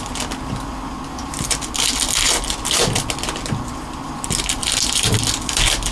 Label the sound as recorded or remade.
recorded